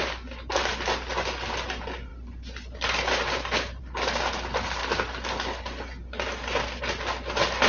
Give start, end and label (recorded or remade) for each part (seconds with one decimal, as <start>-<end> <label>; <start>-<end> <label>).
0.0-7.7 recorded